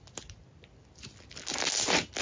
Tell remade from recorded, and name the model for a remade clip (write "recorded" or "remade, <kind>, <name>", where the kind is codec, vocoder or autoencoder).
recorded